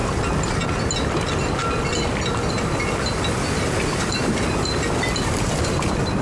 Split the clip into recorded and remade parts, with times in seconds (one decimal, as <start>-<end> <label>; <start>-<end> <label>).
0.0-6.2 recorded